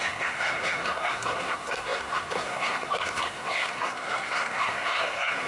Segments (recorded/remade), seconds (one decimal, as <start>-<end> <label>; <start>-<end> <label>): 0.0-5.5 remade